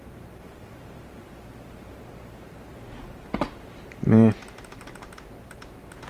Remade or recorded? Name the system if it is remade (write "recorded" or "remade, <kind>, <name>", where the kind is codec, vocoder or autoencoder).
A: remade, vocoder, BigVGAN v2